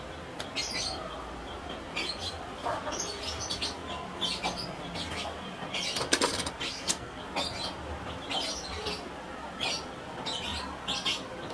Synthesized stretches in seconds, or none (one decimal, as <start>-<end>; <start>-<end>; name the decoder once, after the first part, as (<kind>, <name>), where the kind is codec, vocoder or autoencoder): 6.7-7.2 (codec, SNAC)